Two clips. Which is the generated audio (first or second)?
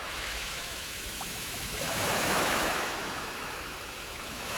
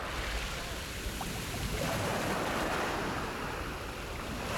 first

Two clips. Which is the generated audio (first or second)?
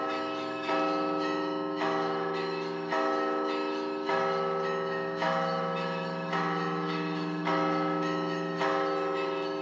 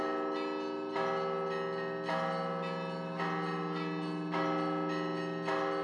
first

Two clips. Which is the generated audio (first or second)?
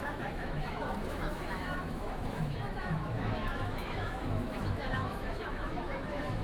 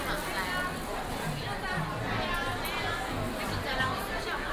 first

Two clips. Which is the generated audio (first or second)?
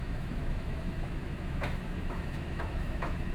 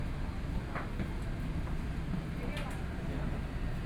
first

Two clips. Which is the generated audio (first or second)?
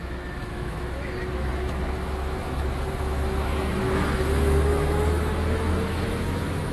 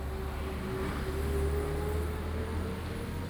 first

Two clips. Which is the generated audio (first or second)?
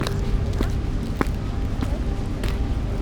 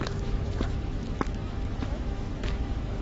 second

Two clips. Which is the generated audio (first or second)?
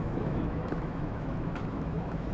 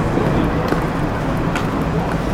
first